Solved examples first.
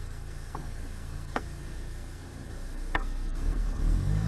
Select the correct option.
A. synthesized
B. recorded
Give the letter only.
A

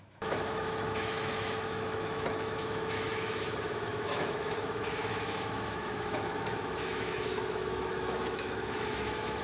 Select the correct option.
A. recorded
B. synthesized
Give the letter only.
B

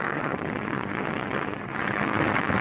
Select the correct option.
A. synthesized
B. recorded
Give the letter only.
A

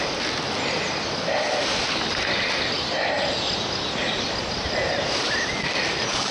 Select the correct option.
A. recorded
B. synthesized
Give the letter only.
A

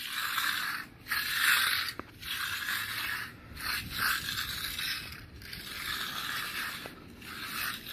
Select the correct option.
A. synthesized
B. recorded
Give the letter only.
B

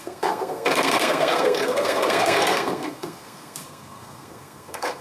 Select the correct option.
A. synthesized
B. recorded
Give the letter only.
A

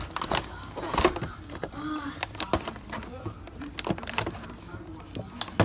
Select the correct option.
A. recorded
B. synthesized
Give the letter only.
A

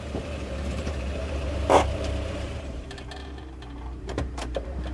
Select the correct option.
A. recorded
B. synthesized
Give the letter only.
B